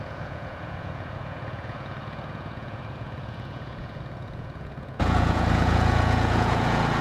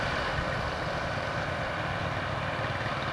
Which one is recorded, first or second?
second